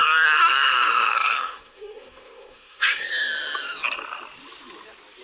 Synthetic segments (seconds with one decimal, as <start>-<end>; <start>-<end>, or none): 0.0-3.1